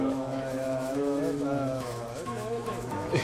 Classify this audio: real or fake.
fake